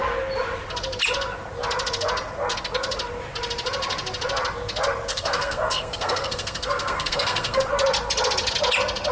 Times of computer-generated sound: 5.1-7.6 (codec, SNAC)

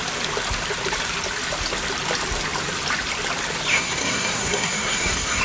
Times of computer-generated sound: 3.7-5.4 (codec, SNAC)

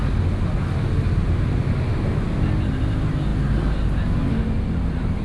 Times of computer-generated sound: none

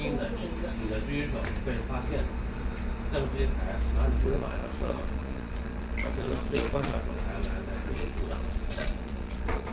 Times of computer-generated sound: 4.2-7.2 (vocoder, Vocos); 7.8-9.7

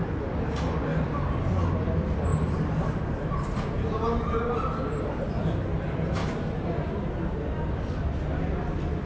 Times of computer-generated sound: 0.9-1.5 (vocoder, BigVGAN v2); 2.3-4.5

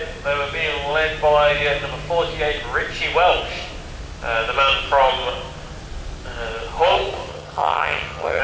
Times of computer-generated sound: 7.3-8.4 (vocoder, HiFi-GAN)

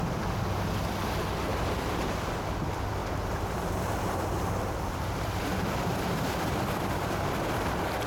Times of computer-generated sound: 1.5-2.3 (vocoder, BigVGAN v2); 3.0-8.1